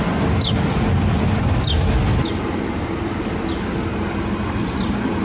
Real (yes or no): yes